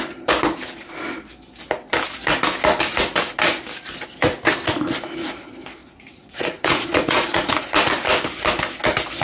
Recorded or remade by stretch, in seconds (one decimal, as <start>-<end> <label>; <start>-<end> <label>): 0.0-5.8 recorded; 5.8-7.5 remade; 7.5-9.2 recorded